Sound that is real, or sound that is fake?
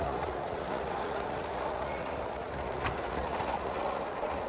fake